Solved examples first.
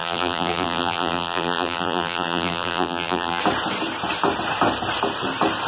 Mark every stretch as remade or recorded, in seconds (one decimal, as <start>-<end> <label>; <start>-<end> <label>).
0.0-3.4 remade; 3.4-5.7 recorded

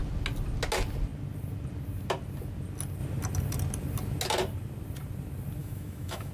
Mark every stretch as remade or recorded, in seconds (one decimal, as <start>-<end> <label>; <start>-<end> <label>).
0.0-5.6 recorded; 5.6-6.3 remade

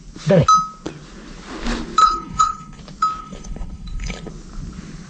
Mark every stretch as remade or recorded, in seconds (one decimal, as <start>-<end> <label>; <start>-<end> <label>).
0.0-2.0 recorded; 2.0-2.8 remade; 2.8-3.2 recorded; 3.2-4.3 remade; 4.3-5.1 recorded